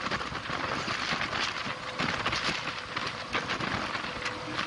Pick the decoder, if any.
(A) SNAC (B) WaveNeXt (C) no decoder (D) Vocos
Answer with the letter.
C